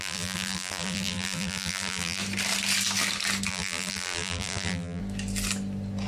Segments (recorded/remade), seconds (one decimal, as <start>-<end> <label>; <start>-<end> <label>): 0.0-2.2 remade; 2.2-3.5 recorded; 3.5-5.0 remade; 5.0-6.1 recorded